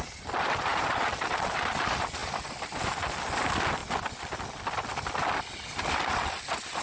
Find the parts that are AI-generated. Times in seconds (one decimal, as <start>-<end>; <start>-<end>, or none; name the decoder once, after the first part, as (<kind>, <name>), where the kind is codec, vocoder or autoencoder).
none